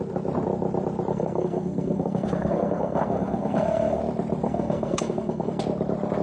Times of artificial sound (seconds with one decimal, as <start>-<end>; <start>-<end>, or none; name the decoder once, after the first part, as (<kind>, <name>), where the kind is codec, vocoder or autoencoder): 1.1-4.0 (codec, SNAC); 4.4-5.6